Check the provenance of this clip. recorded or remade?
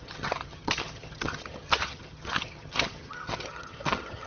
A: remade